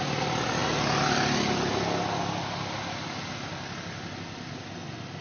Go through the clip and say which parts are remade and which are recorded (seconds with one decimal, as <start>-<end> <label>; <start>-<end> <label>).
0.0-5.2 recorded